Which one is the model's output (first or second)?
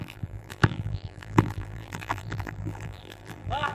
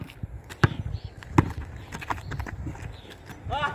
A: first